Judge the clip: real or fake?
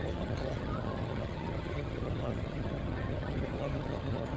fake